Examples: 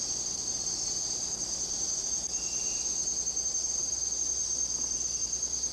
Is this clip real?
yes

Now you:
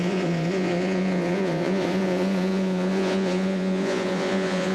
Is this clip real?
no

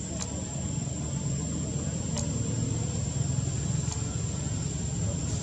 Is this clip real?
yes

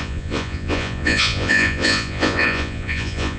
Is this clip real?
no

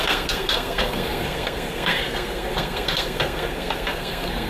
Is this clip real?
no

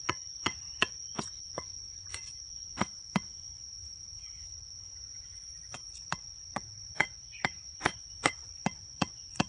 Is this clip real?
no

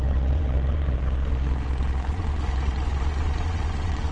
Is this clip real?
no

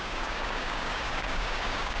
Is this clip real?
no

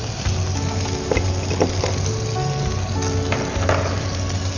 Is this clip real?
yes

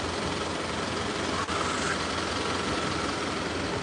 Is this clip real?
yes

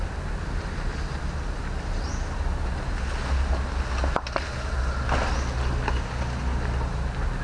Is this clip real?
yes